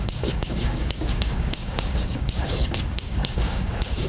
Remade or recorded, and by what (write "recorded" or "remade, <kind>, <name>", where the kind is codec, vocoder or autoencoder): remade, codec, DAC